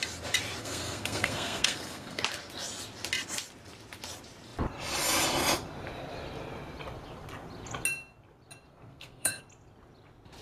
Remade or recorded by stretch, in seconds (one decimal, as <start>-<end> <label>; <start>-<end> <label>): 0.0-0.6 recorded; 0.6-2.2 remade; 2.2-8.7 recorded; 8.7-9.4 remade; 9.4-10.4 recorded